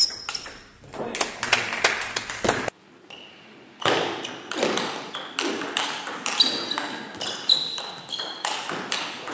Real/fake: real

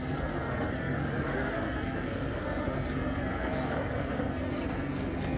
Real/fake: fake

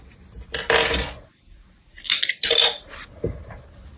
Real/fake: real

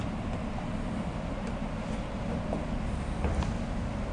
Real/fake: real